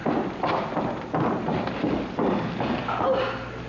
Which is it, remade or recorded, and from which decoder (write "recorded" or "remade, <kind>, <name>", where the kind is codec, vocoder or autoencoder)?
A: recorded